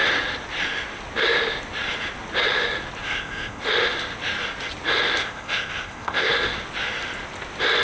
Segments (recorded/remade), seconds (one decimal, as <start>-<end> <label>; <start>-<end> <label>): 0.0-3.0 recorded; 3.0-3.6 remade; 3.6-5.2 recorded; 5.2-6.3 remade; 6.3-7.8 recorded

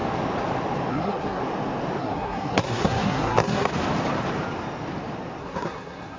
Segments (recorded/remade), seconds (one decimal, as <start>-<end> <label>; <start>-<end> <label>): 0.0-0.9 recorded; 0.9-1.4 remade; 1.4-2.0 recorded; 2.0-3.7 remade; 3.7-5.4 recorded; 5.4-6.2 remade

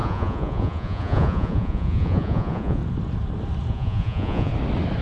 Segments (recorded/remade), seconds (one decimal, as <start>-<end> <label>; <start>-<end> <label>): 0.0-2.8 remade; 2.8-3.7 recorded; 3.7-4.5 remade; 4.5-5.0 recorded

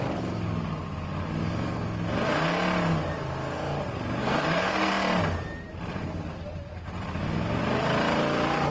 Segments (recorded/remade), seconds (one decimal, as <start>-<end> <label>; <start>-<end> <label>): 0.0-4.2 recorded; 4.2-4.9 remade; 4.9-8.7 recorded

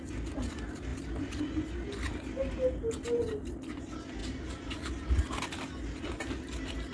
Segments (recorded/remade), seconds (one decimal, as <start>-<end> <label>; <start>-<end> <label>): 0.0-4.2 recorded; 4.2-4.9 remade; 4.9-6.9 recorded

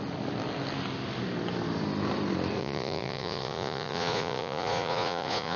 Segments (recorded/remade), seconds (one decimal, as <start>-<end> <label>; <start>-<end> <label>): 0.0-2.6 recorded; 2.6-5.6 remade